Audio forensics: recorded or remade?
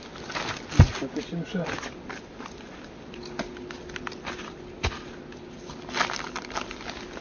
recorded